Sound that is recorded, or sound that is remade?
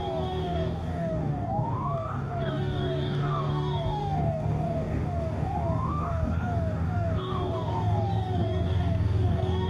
remade